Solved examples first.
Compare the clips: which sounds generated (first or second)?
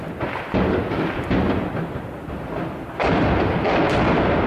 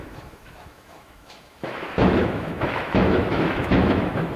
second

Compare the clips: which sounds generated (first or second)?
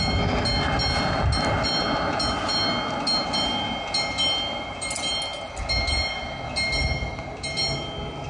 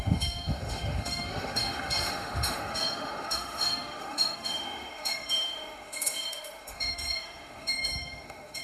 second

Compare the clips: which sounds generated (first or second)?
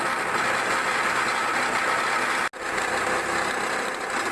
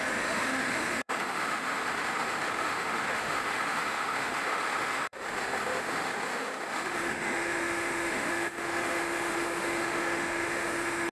second